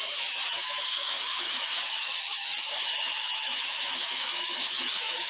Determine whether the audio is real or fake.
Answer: fake